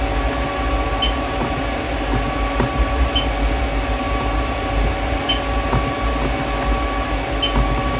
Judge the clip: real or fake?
real